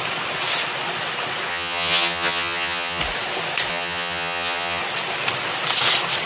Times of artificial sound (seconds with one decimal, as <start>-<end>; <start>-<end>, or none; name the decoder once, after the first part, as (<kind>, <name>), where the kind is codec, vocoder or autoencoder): 1.5-3.0 (vocoder, HiFi-GAN); 3.7-4.8